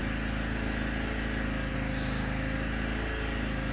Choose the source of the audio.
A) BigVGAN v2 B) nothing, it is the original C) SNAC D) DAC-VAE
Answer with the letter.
B